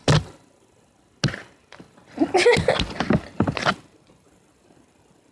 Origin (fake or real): real